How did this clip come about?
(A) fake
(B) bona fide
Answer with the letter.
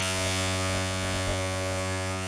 A